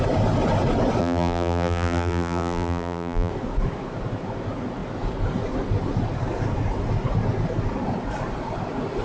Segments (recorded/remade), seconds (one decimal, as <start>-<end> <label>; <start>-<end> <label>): 0.0-1.0 recorded; 1.0-3.3 remade; 3.3-9.0 recorded